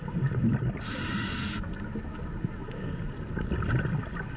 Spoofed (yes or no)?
no